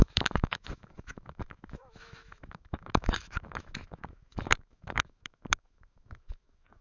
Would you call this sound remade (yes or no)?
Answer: yes